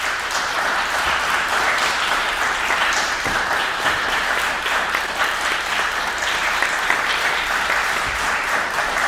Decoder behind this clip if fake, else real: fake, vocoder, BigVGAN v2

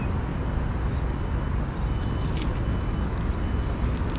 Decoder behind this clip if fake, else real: real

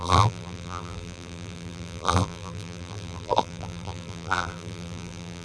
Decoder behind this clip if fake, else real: fake, vocoder, BigVGAN v2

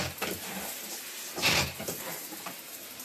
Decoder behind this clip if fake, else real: fake, vocoder, BigVGAN v2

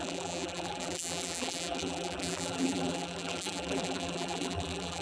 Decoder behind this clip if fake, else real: fake, vocoder, BigVGAN v2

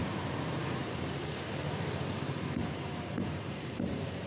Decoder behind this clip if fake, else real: fake, vocoder, BigVGAN v2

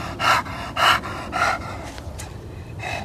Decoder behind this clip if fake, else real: fake, vocoder, BigVGAN v2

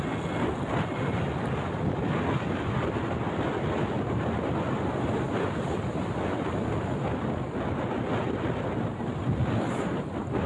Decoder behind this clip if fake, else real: real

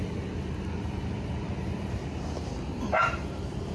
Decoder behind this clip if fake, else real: real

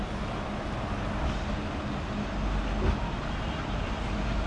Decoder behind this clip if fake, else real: real